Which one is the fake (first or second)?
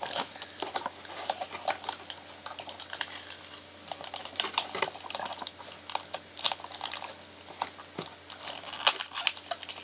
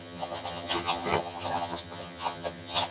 second